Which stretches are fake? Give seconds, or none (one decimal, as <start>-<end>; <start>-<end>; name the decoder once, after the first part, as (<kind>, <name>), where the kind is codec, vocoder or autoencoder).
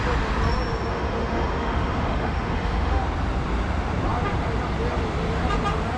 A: 0.9-3.0 (autoencoder, DAC-VAE)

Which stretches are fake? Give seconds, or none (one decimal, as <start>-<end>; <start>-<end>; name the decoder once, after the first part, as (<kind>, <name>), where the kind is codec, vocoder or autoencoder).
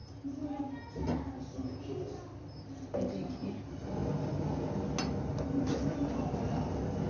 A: none